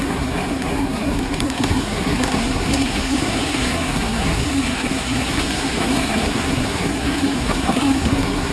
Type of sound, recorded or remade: remade